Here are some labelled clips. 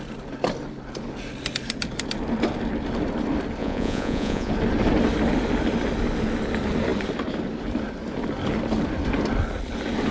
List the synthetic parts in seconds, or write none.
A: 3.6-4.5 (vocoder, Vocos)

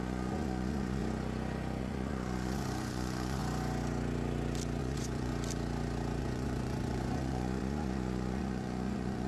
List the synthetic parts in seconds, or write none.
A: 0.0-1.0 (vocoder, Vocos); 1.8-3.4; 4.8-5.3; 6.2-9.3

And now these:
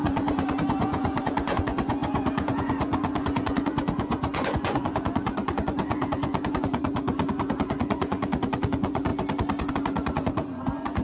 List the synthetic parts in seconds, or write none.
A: 0.0-9.1 (vocoder, Vocos); 9.7-11.0